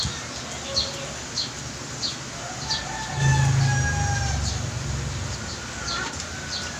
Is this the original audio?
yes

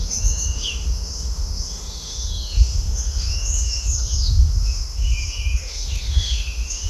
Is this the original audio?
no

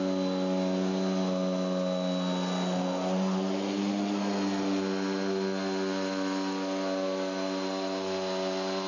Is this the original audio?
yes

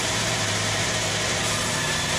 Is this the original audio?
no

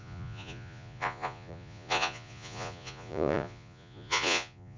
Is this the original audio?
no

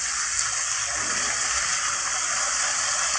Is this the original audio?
yes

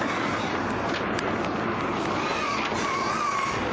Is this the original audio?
yes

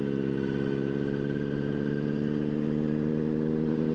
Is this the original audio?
yes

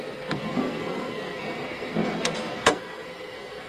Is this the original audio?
no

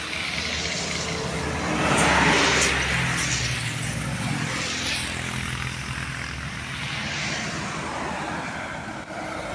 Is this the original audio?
yes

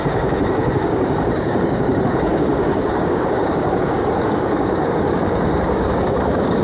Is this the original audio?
no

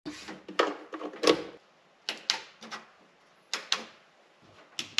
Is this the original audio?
yes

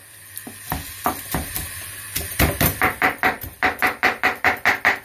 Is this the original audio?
no